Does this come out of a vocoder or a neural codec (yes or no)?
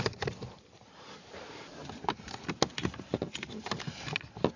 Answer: no